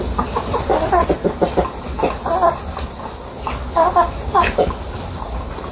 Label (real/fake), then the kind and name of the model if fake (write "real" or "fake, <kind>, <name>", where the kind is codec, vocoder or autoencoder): real